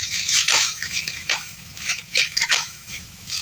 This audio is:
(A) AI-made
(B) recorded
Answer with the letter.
A